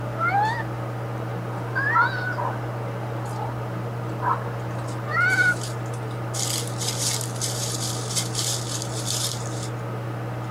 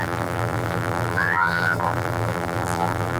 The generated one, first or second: second